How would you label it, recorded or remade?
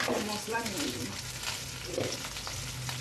recorded